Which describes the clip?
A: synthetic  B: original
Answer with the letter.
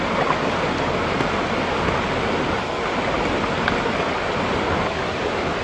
B